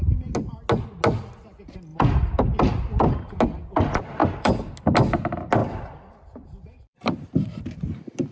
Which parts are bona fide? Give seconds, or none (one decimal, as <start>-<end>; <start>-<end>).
0.0-1.9; 3.4-4.2; 4.7-5.6; 7.6-8.3